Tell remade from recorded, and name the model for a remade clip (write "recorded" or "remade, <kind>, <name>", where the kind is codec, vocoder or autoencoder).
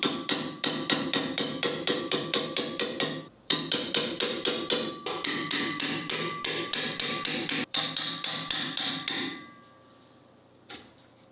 remade, vocoder, BigVGAN v2